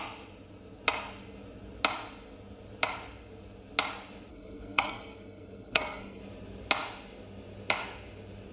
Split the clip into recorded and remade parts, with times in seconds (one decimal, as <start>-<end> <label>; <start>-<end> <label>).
0.0-4.3 recorded; 4.3-6.2 remade; 6.2-8.5 recorded